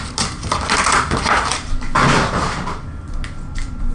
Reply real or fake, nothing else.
real